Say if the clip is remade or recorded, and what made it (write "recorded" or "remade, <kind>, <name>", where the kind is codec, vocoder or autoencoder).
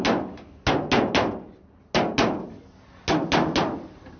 recorded